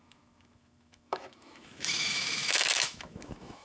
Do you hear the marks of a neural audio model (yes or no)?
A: yes